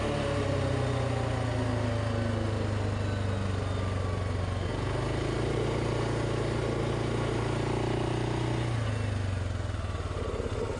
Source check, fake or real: real